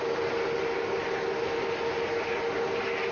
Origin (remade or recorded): recorded